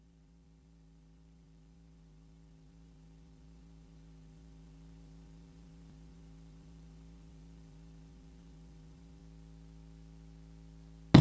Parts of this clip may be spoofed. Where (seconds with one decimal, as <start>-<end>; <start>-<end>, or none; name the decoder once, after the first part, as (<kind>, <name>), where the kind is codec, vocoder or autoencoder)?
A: 0.0-9.2 (vocoder, BigVGAN v2)